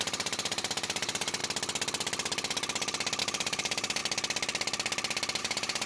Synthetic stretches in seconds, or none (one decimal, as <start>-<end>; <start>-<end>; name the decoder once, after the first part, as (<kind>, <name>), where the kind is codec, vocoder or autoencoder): 0.0-1.4 (vocoder, BigVGAN v2); 3.2-4.0; 5.4-5.9

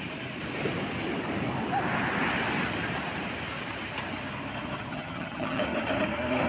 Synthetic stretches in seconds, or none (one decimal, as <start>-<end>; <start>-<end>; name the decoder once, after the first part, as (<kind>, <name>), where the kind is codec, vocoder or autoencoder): 4.9-5.6 (vocoder, HiFi-GAN)